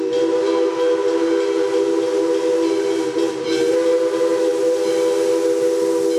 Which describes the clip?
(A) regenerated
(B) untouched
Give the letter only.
B